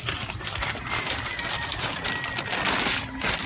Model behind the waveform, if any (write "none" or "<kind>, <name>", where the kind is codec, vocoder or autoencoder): none